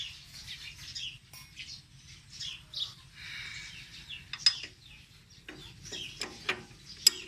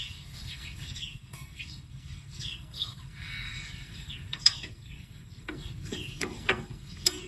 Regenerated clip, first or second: second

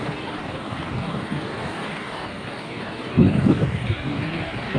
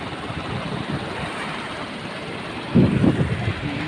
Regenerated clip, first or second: first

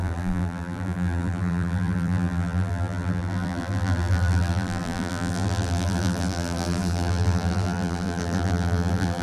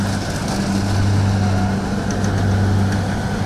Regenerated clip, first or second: first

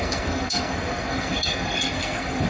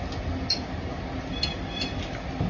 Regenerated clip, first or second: first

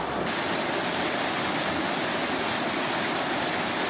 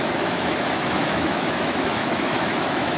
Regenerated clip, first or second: second